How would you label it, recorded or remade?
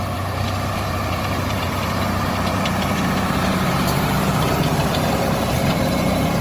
remade